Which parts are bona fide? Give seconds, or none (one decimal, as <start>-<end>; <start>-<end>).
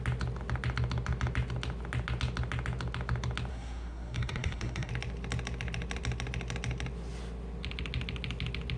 0.0-3.5; 4.9-8.8